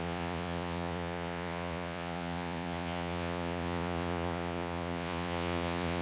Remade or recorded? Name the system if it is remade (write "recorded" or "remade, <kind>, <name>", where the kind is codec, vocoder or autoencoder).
remade, vocoder, Vocos